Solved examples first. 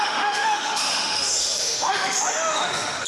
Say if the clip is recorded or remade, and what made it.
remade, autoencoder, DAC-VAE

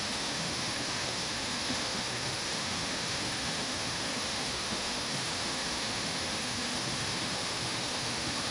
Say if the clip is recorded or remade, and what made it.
remade, autoencoder, DAC-VAE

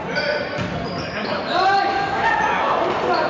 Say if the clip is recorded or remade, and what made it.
recorded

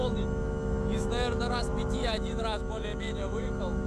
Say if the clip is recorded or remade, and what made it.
remade, autoencoder, DAC-VAE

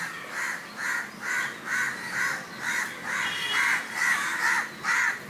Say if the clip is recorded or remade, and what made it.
recorded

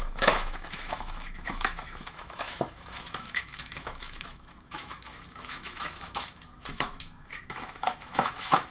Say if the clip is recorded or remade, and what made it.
remade, autoencoder, DAC-VAE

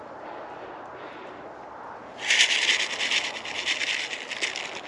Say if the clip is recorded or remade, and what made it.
recorded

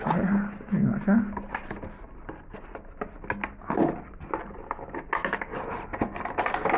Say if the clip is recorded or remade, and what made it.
recorded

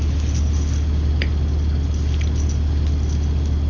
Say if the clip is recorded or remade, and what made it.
recorded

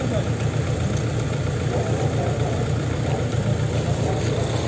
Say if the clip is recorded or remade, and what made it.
recorded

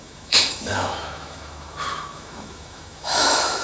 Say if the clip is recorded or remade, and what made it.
remade, autoencoder, DAC-VAE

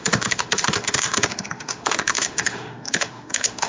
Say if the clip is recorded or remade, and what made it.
remade, autoencoder, DAC-VAE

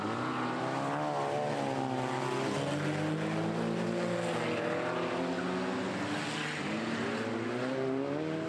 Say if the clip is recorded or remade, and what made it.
recorded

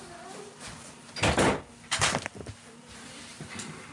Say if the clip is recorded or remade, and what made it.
recorded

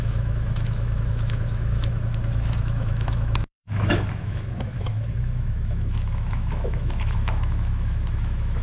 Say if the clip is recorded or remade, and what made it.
remade, autoencoder, DAC-VAE